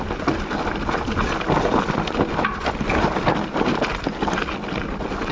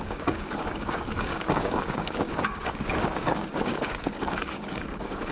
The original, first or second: first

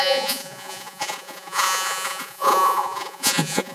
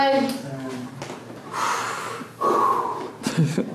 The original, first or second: second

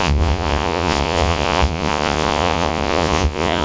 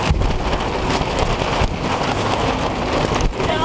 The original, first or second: second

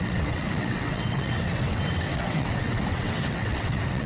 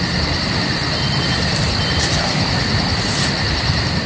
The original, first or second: second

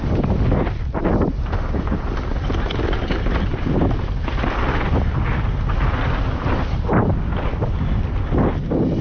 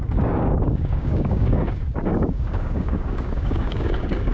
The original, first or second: first